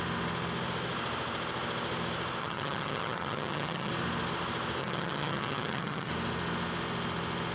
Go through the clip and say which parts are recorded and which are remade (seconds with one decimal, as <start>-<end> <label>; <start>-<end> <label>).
0.0-2.4 recorded; 2.4-3.9 remade; 3.9-4.8 recorded; 4.8-6.1 remade; 6.1-7.5 recorded